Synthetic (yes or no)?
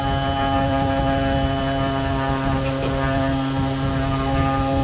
no